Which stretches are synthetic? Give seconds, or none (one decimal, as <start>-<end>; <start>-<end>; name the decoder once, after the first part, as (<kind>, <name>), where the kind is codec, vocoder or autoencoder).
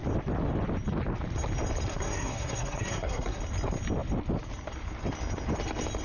1.9-3.4 (codec, SNAC)